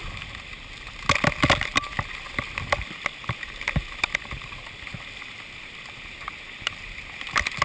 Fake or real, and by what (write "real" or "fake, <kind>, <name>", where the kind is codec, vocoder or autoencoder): real